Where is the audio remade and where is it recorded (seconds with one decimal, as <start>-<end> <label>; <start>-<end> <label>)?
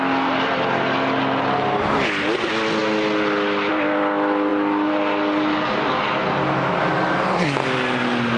0.0-8.4 recorded